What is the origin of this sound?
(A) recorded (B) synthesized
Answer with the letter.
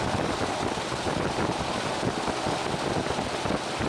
A